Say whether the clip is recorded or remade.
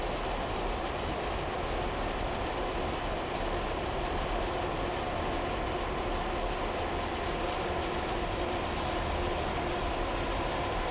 recorded